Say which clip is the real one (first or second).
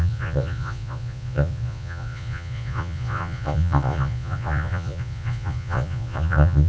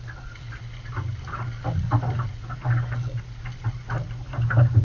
second